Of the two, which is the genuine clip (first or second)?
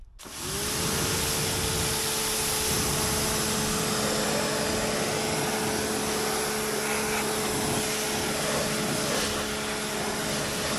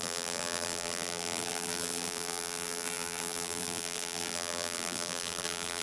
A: first